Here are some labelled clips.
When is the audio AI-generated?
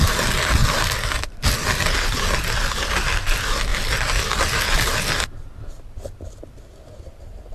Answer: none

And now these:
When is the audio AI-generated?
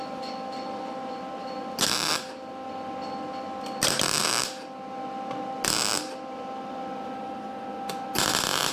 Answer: 1.4-2.1 (vocoder, BigVGAN v2)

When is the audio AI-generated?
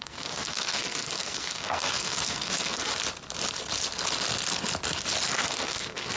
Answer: 0.0-2.9 (codec, SNAC); 5.3-6.2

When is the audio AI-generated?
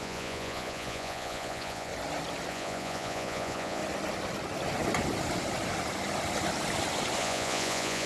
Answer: 0.0-1.9 (vocoder, Vocos); 2.5-3.8; 7.2-8.1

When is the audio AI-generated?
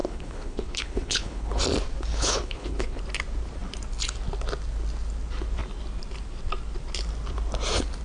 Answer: 0.0-1.6 (codec, HILCodec); 2.1-3.0